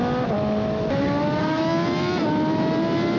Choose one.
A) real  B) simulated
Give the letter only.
A